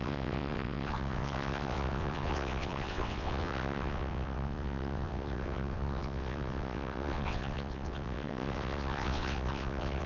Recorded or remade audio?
remade